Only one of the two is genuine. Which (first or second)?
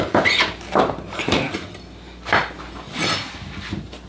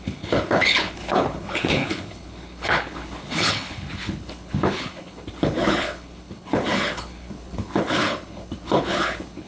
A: first